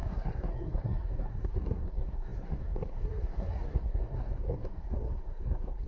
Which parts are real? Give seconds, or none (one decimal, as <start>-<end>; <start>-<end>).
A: none